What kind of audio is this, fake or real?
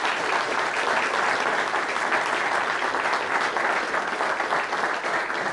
real